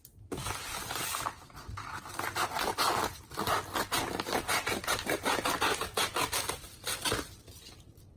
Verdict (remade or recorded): recorded